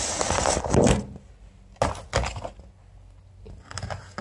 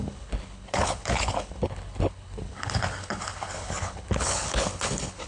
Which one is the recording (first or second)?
first